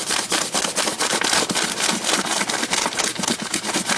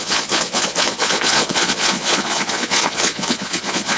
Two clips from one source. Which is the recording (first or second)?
first